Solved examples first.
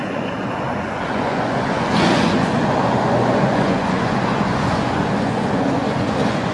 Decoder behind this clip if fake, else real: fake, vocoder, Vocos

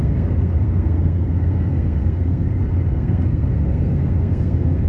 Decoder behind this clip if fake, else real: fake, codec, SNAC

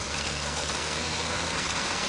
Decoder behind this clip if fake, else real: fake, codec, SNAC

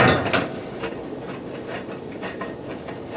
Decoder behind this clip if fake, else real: real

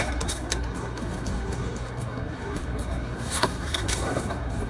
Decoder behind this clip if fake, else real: fake, codec, SNAC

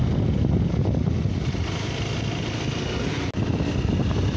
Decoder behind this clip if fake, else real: real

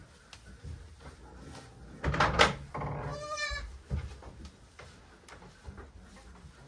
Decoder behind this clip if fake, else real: real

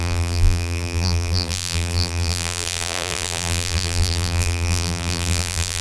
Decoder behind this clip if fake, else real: fake, vocoder, BigVGAN v2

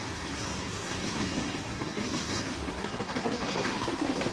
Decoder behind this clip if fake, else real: fake, codec, SNAC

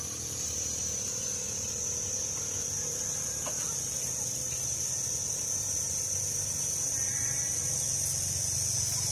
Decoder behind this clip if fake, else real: real